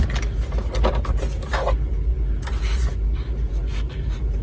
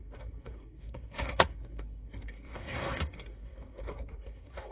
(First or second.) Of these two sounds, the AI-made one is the second